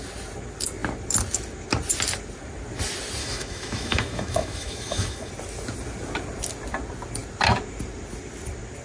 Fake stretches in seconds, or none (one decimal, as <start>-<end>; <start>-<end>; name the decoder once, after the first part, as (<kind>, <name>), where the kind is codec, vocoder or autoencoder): 3.2-5.3 (autoencoder, DAC-VAE)